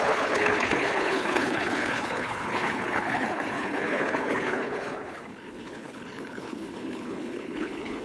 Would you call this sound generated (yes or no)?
yes